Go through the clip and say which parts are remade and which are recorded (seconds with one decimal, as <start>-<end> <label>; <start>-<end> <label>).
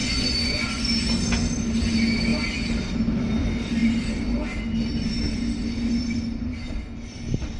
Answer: 0.0-0.9 remade; 0.9-7.6 recorded